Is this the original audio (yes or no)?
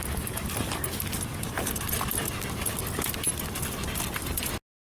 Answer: yes